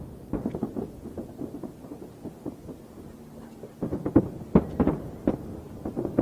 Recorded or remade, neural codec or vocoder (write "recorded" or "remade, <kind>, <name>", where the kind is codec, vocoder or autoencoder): recorded